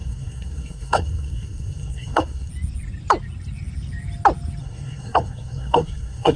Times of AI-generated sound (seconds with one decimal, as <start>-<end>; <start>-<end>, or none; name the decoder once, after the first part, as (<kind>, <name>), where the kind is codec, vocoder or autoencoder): 0.0-2.5 (codec, SNAC); 4.6-6.4